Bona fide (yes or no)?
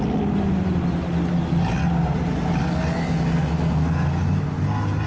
yes